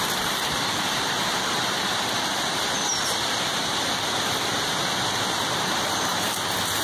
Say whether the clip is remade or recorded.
remade